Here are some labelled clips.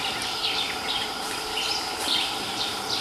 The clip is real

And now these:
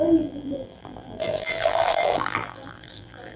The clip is fake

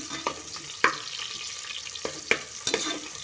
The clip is real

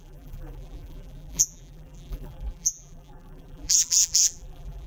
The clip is fake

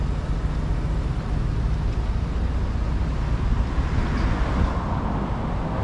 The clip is real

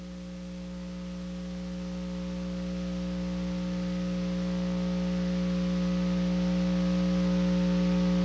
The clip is real